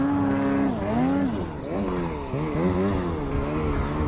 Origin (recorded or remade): recorded